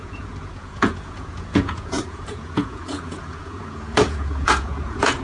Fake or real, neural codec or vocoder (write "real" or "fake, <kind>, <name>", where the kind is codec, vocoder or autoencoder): fake, vocoder, Vocos